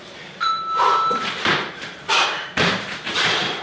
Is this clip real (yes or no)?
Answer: no